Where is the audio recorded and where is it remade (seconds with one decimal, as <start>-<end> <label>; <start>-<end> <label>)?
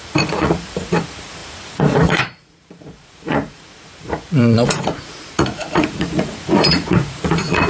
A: 0.0-7.7 remade